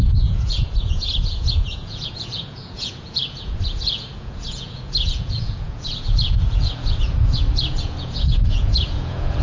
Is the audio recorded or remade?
remade